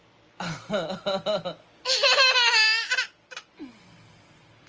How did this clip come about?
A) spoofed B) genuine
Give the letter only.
B